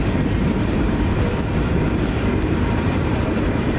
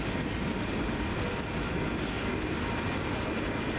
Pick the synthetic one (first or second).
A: first